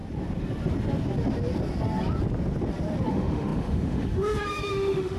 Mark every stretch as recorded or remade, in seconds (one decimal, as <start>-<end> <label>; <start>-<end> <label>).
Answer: 0.0-3.1 recorded; 3.1-5.2 remade